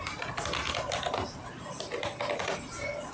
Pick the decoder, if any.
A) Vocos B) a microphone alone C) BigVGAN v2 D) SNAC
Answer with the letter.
B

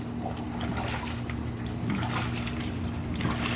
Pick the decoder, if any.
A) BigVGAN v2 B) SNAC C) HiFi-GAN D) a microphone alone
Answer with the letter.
D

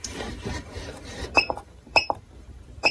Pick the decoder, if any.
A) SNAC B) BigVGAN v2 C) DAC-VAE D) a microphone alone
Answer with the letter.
B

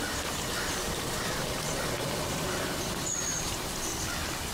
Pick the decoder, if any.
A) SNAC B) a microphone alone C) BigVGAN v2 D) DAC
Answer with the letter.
C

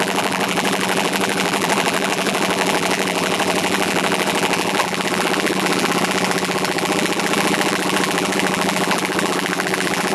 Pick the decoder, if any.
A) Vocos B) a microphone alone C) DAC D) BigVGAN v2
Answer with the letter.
D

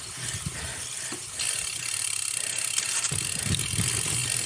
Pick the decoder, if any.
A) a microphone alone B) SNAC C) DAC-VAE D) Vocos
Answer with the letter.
A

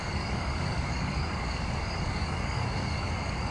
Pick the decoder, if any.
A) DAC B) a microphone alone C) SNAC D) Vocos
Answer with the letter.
A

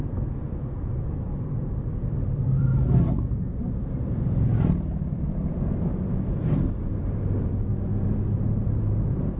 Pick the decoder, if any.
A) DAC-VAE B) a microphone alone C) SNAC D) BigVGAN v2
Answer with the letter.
D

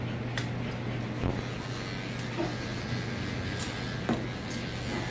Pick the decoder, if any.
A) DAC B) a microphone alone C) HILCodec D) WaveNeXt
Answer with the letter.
B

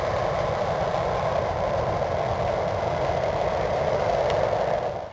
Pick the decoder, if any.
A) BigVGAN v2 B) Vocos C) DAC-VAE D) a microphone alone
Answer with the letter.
D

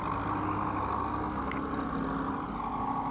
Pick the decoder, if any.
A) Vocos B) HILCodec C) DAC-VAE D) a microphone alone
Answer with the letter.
D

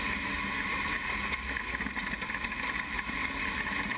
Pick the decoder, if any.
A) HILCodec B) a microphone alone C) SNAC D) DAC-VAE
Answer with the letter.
B